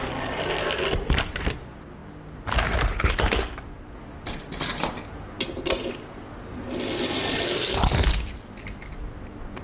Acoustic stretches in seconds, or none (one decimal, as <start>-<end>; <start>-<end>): 0.0-9.6